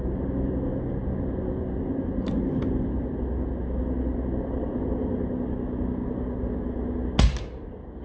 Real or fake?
real